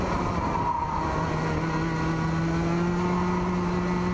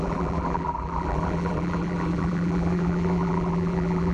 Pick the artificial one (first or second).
second